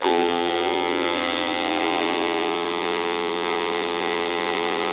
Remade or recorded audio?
remade